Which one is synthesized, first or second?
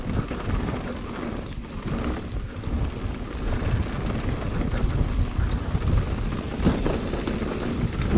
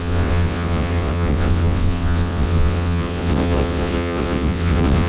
second